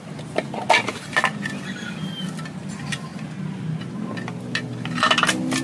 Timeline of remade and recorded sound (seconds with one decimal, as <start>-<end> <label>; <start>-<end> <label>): 0.0-5.6 recorded